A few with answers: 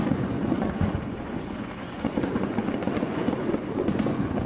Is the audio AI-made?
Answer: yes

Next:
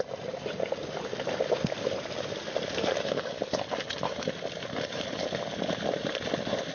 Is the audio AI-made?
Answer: no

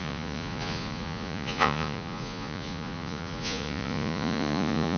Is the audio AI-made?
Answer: yes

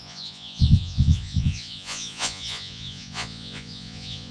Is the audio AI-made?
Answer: yes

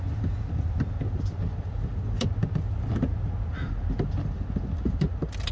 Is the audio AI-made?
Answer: no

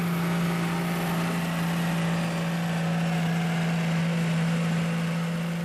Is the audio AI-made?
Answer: no